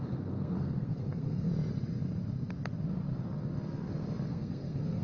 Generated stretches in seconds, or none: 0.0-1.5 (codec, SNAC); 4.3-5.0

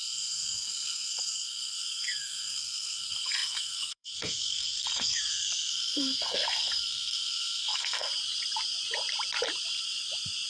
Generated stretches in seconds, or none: 0.0-8.1 (codec, SNAC)

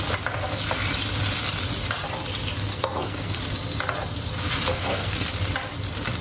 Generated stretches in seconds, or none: 2.7-3.4 (codec, SNAC); 4.7-5.3

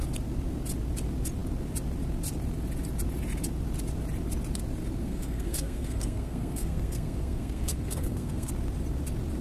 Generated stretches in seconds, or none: 5.0-8.5 (codec, SNAC)

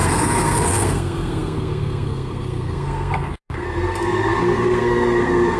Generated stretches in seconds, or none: 0.0-5.6 (codec, SNAC)

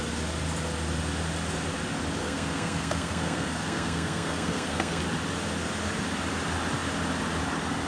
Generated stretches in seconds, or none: 2.2-5.0 (codec, SNAC)